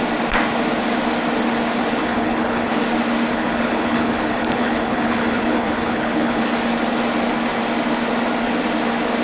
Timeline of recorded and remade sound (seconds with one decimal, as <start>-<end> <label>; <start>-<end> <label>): 0.0-2.0 recorded; 2.0-2.7 remade; 2.7-3.3 recorded; 3.3-6.4 remade; 6.4-9.2 recorded